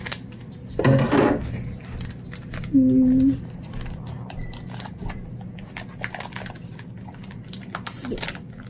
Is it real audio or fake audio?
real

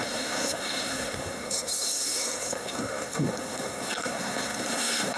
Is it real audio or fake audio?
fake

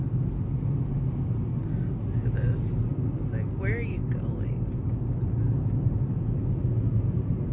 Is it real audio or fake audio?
real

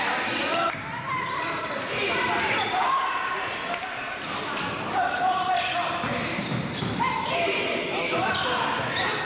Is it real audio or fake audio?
real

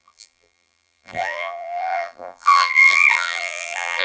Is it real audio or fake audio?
fake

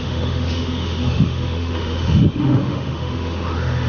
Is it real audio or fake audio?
fake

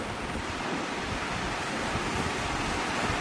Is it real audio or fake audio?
real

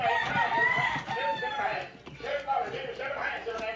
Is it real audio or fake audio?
real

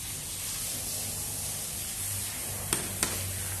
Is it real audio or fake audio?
real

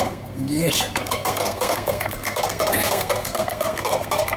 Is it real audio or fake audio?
fake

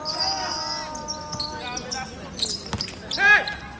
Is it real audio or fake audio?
real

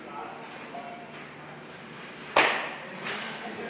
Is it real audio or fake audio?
real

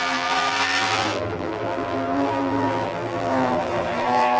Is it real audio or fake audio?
fake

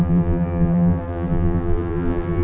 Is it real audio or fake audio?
fake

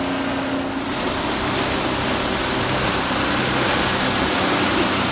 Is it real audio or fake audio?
real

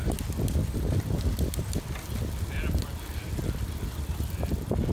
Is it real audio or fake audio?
fake